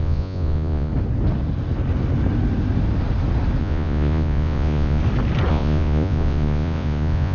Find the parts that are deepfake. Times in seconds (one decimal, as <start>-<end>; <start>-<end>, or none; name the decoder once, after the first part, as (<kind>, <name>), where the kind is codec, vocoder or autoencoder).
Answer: 0.0-0.9 (vocoder, Vocos); 3.6-5.0; 5.5-7.3